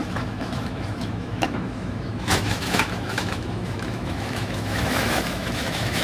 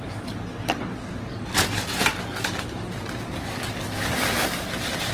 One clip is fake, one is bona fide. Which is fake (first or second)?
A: first